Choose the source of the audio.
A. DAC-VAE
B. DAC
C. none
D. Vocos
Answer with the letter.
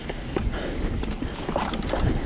C